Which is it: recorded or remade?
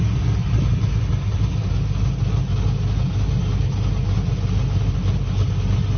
recorded